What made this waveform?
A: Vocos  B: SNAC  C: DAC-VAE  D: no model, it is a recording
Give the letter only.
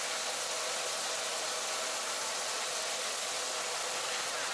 D